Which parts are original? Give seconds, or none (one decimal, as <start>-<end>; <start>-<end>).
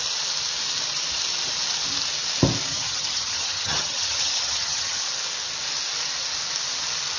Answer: 0.0-2.7; 5.0-7.2